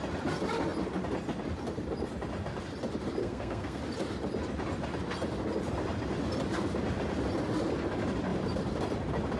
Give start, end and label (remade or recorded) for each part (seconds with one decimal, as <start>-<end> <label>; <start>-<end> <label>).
0.0-3.2 recorded; 3.2-3.8 remade; 3.8-9.4 recorded